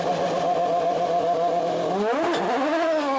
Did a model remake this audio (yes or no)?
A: no